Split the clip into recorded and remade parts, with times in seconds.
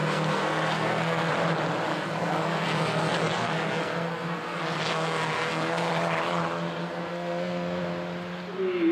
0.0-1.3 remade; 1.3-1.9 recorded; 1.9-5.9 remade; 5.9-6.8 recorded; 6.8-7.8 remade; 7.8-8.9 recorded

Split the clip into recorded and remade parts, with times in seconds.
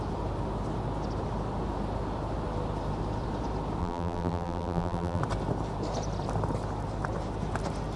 0.0-3.8 recorded; 3.8-5.2 remade; 5.2-8.0 recorded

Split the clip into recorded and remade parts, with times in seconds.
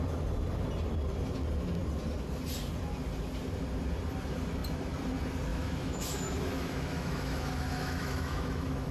0.0-5.5 recorded; 5.5-8.9 remade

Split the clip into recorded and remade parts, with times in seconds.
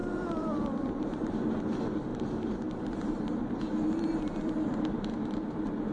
0.0-1.6 remade; 1.6-2.1 recorded; 2.1-5.9 remade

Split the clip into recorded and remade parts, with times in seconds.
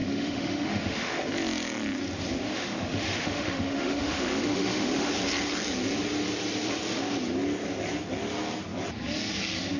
0.0-1.2 remade; 1.2-2.3 recorded; 2.3-5.1 remade; 5.1-9.8 recorded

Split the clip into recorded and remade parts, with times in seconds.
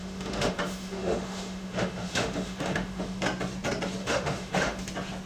0.0-3.2 remade; 3.2-4.0 recorded; 4.0-4.8 remade; 4.8-5.3 recorded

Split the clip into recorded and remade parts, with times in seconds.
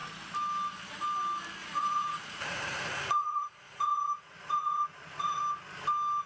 0.0-1.6 recorded; 1.6-5.4 remade; 5.4-6.3 recorded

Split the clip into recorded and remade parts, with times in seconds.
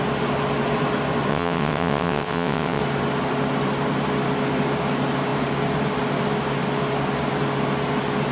0.0-1.3 recorded; 1.3-2.8 remade; 2.8-8.3 recorded